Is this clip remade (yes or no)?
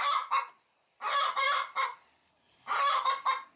yes